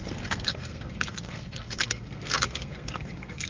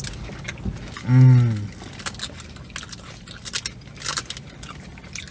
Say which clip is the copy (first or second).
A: first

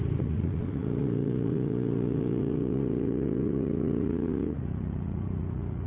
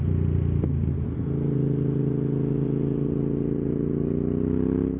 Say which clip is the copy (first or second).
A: first